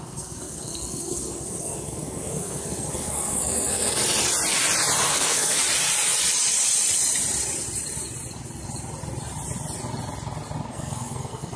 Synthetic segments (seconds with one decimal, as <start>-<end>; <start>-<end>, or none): 0.0-4.0; 5.1-5.6; 10.7-11.6